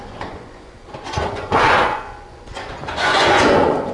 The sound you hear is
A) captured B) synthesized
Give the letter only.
B